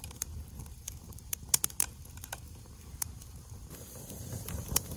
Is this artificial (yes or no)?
yes